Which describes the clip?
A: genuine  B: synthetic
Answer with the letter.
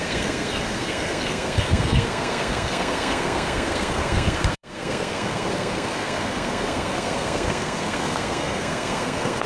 B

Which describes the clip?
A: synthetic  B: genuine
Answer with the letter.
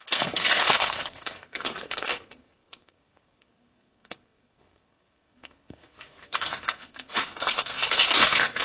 A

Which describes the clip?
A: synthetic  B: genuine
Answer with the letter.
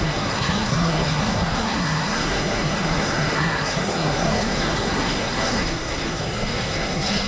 A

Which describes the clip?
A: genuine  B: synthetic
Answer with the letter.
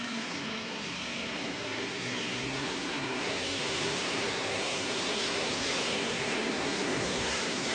B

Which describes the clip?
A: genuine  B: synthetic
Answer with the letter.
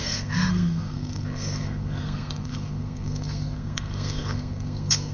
B